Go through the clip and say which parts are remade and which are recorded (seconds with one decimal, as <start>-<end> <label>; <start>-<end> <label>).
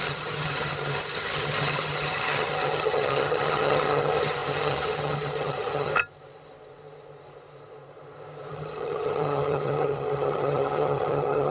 0.0-5.9 remade; 5.9-8.5 recorded; 8.5-11.5 remade